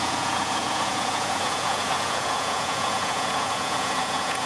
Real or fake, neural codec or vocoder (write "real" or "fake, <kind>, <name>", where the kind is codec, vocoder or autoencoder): fake, vocoder, Vocos